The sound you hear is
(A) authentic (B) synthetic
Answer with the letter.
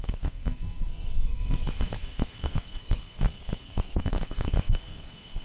B